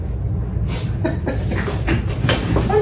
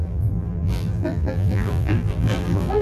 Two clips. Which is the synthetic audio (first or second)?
second